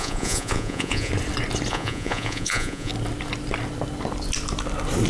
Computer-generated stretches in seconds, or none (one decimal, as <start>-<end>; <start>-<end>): 0.0-1.1; 1.7-2.9